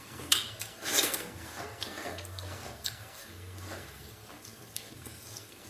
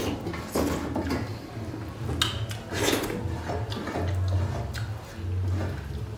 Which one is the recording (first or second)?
second